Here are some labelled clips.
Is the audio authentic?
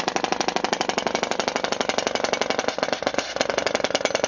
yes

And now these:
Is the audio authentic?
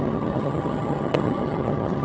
no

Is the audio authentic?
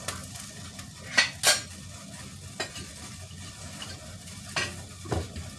yes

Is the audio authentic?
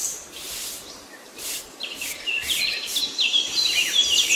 no